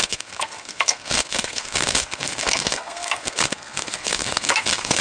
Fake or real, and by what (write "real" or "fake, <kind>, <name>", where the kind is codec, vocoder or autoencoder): fake, codec, SNAC